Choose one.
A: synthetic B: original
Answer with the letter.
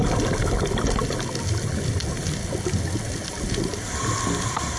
B